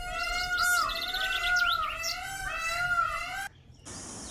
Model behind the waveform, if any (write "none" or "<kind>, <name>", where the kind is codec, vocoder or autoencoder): none